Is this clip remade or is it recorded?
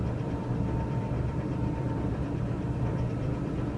remade